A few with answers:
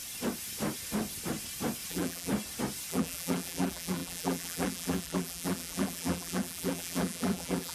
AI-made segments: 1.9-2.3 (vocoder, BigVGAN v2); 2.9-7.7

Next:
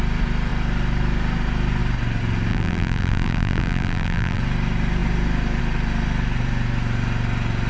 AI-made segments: 2.5-4.4 (vocoder, BigVGAN v2)

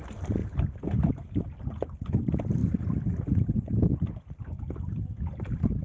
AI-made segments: 0.4-1.1 (vocoder, BigVGAN v2); 2.6-4.1

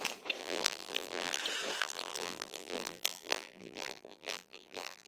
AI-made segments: 0.4-1.4 (vocoder, BigVGAN v2); 1.8-5.1

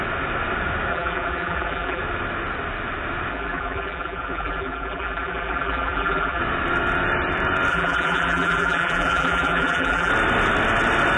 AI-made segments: 0.9-2.0 (vocoder, BigVGAN v2); 3.3-6.4; 7.7-10.1

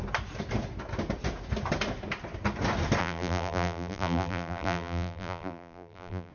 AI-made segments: 3.0-6.3 (vocoder, BigVGAN v2)